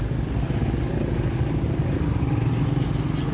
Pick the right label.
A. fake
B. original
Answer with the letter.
B